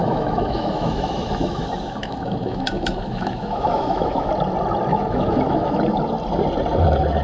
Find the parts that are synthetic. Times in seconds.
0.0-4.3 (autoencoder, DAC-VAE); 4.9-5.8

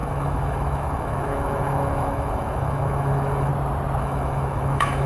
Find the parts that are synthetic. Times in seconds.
0.0-3.5 (autoencoder, DAC-VAE); 4.0-5.1

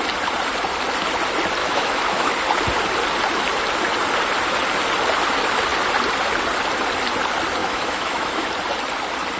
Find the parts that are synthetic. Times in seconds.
1.6-2.3 (autoencoder, DAC-VAE); 7.6-8.5

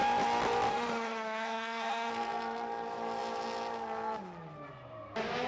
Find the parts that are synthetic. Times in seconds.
0.7-2.1 (autoencoder, DAC-VAE)